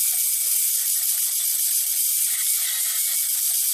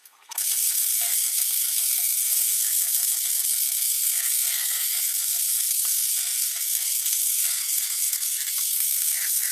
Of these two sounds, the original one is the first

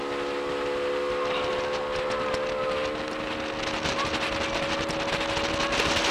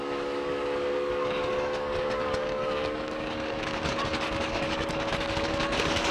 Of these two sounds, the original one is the first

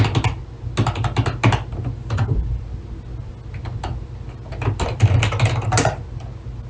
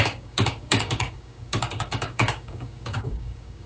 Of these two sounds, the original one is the first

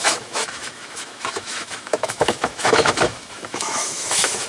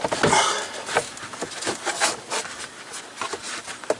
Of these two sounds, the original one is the second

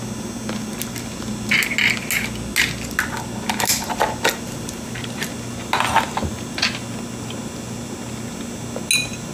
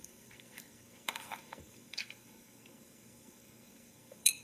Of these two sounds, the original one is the first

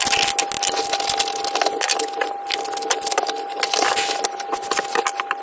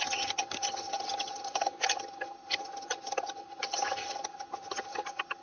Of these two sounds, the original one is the first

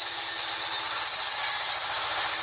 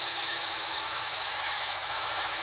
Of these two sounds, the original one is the first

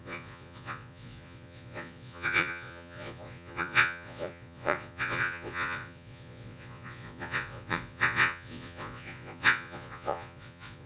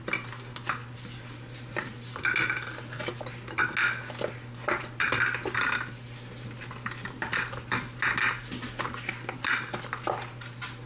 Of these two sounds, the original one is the second